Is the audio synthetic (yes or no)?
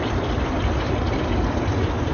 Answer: yes